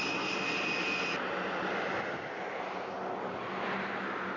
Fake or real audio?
real